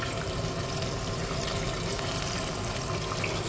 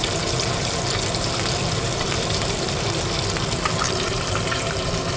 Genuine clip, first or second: first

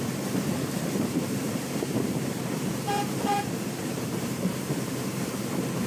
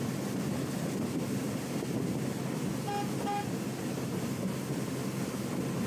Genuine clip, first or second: second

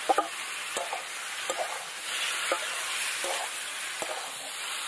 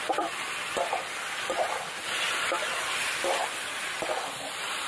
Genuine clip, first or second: first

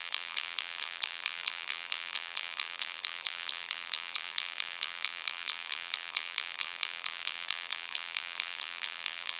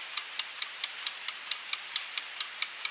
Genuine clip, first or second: second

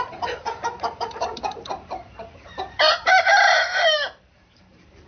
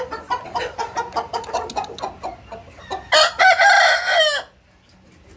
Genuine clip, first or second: second